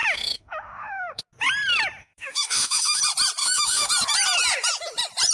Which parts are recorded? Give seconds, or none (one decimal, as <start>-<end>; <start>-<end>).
1.2-2.0; 3.0-3.4; 3.9-5.3